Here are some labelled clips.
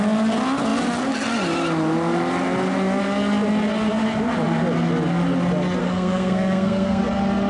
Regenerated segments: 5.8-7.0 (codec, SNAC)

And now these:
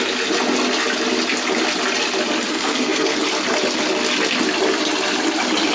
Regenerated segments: 2.5-3.2 (codec, SNAC)

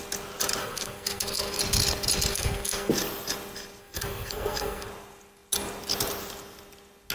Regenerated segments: 0.6-1.6 (codec, SNAC); 2.3-2.9; 3.8-4.9

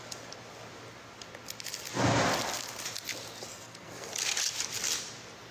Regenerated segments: 3.5-4.1 (codec, SNAC)